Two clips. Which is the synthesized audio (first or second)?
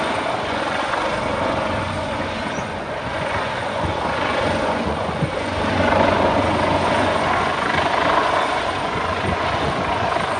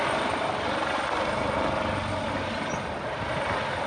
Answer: first